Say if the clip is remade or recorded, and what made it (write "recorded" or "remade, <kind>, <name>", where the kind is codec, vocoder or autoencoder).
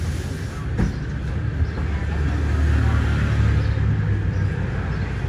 recorded